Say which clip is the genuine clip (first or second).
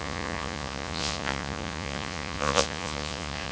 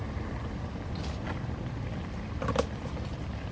second